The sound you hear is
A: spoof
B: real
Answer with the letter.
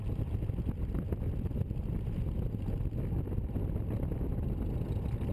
B